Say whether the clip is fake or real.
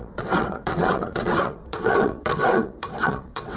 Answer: fake